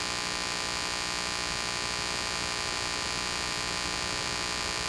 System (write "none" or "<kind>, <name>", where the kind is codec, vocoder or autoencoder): none